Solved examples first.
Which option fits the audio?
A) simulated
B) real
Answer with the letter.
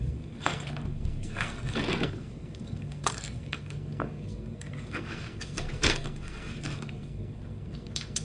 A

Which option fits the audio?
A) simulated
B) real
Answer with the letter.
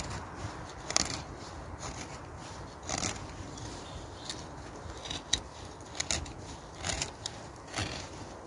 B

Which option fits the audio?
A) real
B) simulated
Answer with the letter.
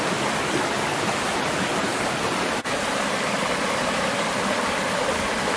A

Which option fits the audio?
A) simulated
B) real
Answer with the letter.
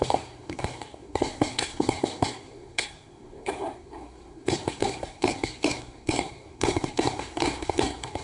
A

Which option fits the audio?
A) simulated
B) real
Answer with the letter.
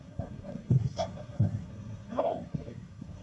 A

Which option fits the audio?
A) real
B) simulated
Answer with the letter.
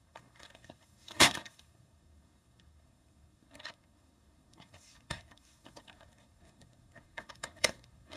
B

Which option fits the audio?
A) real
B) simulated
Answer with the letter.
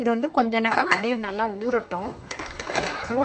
B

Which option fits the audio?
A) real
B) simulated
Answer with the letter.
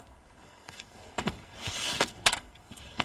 B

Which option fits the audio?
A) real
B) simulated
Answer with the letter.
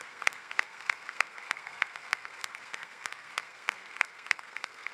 B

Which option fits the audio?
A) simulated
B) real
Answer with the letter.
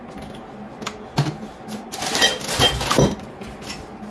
B